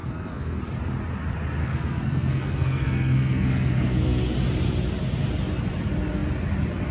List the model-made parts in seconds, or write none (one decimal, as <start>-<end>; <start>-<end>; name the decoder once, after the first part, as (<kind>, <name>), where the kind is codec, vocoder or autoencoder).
0.0-0.6 (codec, SNAC); 1.6-4.2